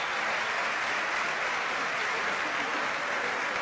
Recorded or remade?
recorded